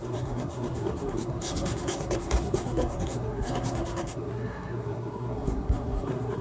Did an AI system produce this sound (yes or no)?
yes